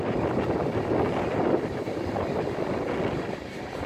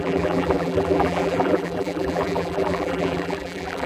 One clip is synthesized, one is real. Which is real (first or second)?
first